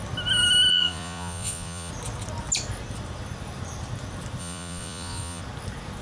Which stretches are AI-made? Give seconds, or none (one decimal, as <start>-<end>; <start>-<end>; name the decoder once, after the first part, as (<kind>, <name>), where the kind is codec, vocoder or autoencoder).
0.7-1.9 (vocoder, Vocos); 4.4-5.4